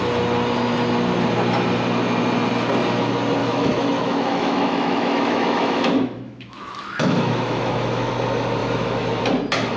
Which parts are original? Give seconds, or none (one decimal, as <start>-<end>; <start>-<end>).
0.0-3.4; 8.1-8.6; 9.2-9.8